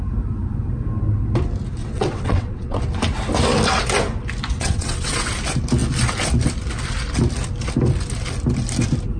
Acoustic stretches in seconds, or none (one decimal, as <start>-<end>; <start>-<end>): 0.0-1.8; 2.8-4.5; 5.3-9.2